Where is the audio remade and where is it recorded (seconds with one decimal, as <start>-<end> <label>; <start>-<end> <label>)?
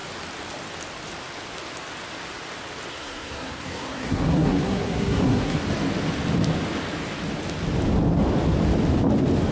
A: 0.0-2.9 recorded; 2.9-5.6 remade; 5.6-9.5 recorded